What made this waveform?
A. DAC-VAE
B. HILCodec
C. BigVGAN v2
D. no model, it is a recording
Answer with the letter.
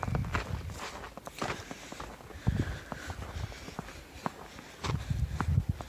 D